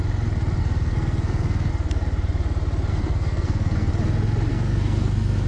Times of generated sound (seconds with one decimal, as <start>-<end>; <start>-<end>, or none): 0.6-1.7; 2.9-3.9; 4.5-5.5